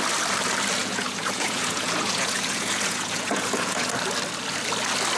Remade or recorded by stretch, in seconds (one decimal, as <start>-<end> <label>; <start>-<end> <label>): 0.0-0.8 recorded; 0.8-3.9 remade; 3.9-5.2 recorded